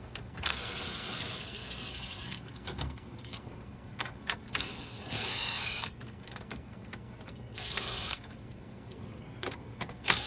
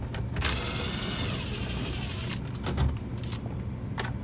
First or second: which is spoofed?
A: first